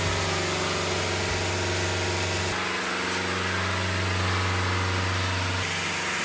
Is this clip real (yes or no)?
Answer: yes